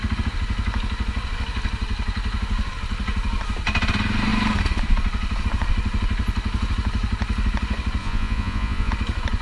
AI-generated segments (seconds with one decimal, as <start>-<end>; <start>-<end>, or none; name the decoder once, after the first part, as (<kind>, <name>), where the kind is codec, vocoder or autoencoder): 8.0-8.9 (vocoder, Vocos)